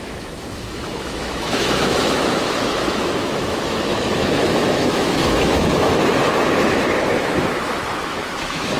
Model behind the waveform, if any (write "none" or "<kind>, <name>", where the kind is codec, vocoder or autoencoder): autoencoder, DAC-VAE